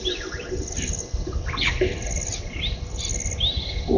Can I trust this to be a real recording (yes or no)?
yes